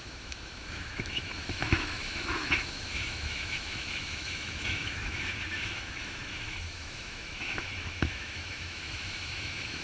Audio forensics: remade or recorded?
remade